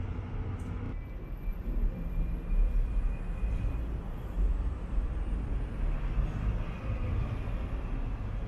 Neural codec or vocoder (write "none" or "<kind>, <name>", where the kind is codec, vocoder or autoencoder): none